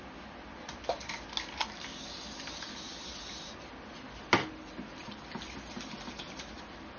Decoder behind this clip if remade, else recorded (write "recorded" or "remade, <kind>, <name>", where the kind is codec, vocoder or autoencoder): recorded